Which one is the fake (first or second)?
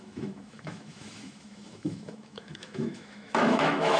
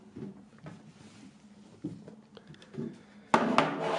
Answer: first